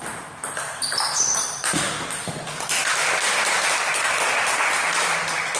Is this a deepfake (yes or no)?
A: yes